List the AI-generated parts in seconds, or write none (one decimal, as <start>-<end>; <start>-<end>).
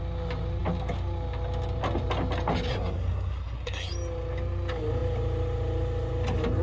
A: 2.7-3.9